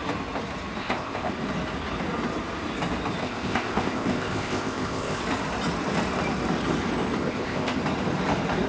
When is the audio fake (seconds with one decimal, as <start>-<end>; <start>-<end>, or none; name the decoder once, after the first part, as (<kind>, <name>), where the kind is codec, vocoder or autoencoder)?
0.8-1.3 (codec, ZipCodec); 3.2-5.2; 7.2-7.8